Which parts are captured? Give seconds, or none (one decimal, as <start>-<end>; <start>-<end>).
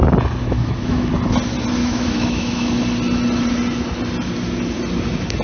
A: 0.0-0.4; 1.1-1.8; 2.7-5.4